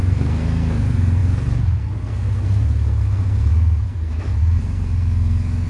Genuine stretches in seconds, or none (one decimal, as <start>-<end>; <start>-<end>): none

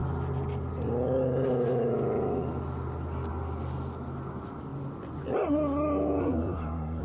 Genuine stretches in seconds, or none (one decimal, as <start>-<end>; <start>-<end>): 0.0-6.2

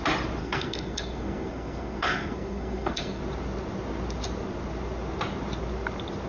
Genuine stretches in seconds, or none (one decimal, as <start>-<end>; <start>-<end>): 0.0-0.4; 3.2-6.3

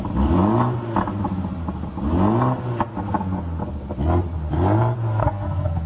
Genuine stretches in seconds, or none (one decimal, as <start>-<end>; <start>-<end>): 0.0-5.2

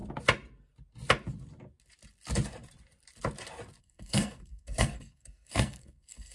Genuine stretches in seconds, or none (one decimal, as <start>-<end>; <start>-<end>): 0.0-3.8